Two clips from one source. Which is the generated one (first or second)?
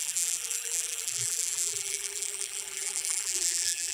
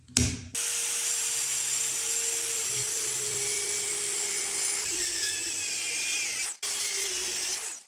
first